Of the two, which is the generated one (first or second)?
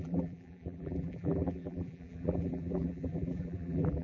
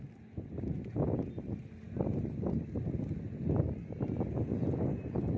first